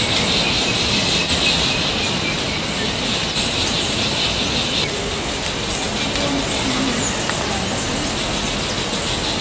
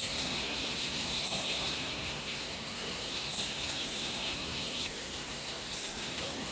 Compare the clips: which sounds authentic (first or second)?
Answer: first